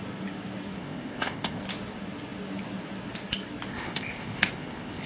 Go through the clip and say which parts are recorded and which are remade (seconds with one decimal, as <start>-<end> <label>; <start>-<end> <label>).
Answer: 0.0-0.8 recorded; 0.8-1.6 remade; 1.6-3.7 recorded; 3.7-5.1 remade